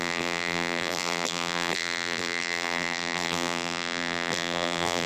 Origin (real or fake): fake